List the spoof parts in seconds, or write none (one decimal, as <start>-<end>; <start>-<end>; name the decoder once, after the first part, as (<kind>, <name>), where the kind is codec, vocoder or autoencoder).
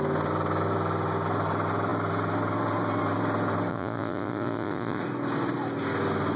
3.7-5.0 (vocoder, Vocos)